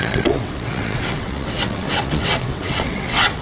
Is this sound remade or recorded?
remade